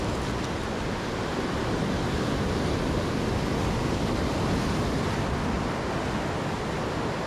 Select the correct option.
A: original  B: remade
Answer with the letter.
A